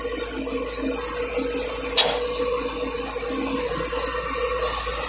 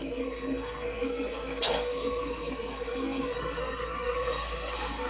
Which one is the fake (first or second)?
second